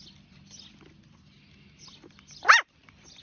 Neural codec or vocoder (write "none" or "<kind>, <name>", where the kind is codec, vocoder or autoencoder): none